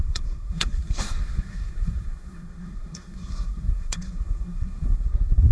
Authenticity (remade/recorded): remade